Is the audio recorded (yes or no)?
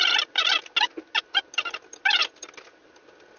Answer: yes